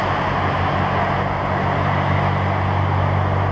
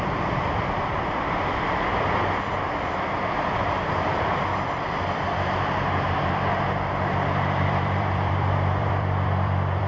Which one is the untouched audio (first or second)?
first